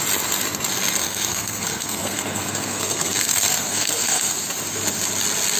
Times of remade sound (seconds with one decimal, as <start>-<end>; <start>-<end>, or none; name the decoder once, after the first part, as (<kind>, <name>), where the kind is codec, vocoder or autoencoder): 1.0-4.4 (codec, SNAC)